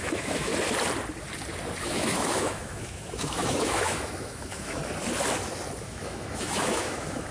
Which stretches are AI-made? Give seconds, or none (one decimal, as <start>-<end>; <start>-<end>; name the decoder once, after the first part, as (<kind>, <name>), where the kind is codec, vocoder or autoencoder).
0.0-0.5 (autoencoder, DAC-VAE); 1.8-4.8; 5.8-7.3